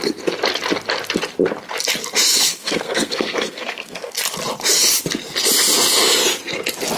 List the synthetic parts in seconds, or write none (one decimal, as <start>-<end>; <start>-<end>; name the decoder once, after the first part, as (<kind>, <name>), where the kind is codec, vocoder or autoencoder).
2.5-4.1 (codec, SNAC)